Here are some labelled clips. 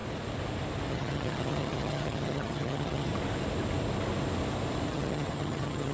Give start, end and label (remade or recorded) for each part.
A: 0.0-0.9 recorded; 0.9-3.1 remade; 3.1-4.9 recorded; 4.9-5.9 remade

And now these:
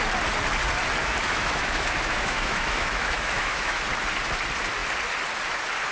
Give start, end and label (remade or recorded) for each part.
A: 0.0-1.0 recorded; 1.0-3.8 remade; 3.8-5.9 recorded

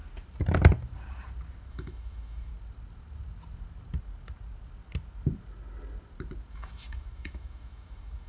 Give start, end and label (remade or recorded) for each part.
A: 0.0-1.7 recorded; 1.7-2.5 remade; 2.5-6.5 recorded; 6.5-8.3 remade

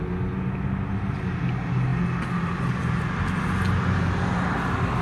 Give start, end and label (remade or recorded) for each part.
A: 0.0-5.0 recorded

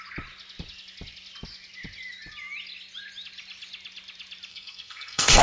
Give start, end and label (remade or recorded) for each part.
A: 0.0-4.5 recorded; 4.5-5.4 remade

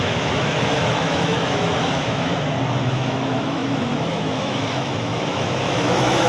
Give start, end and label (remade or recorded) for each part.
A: 0.0-2.3 remade; 2.3-2.8 recorded; 2.8-6.3 remade